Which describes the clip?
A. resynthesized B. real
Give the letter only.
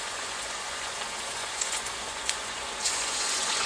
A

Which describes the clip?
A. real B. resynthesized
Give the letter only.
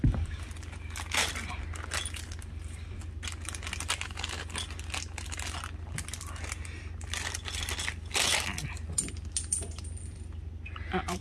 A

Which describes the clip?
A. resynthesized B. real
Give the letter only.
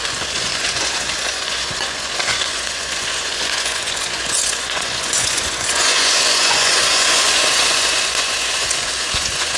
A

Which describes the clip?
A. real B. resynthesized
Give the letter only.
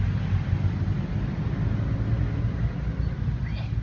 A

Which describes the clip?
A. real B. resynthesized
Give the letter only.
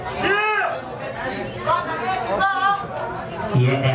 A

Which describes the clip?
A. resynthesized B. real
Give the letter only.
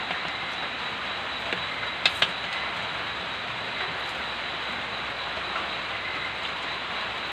B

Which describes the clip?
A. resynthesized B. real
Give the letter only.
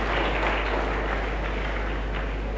B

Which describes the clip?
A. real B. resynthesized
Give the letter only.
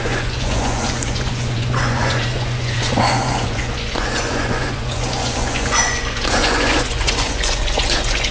B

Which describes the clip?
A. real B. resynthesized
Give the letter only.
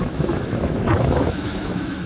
B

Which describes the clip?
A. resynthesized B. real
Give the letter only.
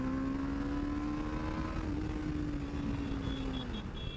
B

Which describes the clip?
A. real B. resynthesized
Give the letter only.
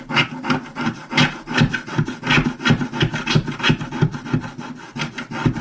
A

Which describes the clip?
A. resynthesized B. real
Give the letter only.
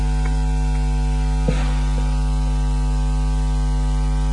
B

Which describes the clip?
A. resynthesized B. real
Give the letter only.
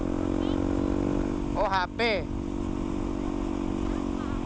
B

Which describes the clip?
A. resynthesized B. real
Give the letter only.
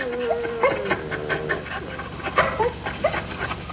B